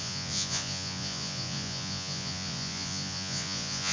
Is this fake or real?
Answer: fake